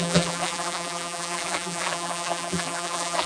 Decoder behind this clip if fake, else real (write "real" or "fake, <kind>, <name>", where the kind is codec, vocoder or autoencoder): fake, vocoder, BigVGAN v2